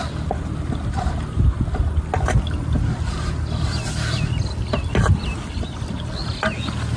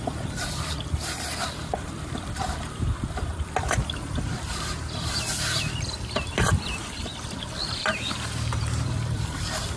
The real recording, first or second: first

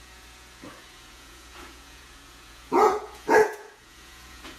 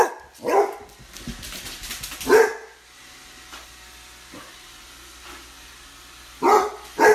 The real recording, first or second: second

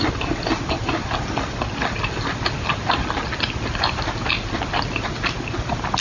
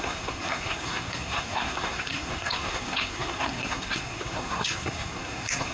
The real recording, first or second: first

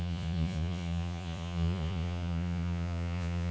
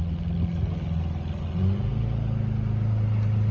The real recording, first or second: second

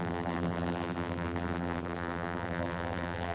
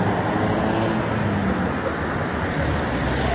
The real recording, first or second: second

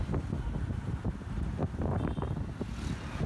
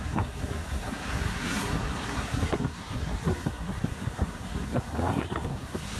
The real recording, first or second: first